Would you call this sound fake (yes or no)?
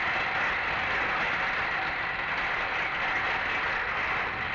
no